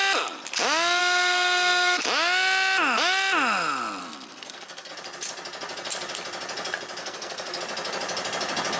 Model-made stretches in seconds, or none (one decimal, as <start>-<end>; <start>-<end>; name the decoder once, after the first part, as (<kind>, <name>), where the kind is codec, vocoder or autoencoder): 1.0-2.0 (codec, SNAC); 4.0-4.9; 7.0-7.6